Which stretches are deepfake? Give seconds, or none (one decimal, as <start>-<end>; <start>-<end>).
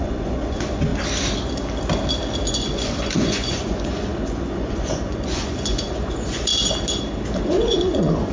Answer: 0.0-0.9; 2.5-6.5; 7.4-8.3